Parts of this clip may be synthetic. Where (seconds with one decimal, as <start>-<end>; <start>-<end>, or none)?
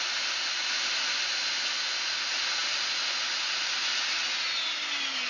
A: none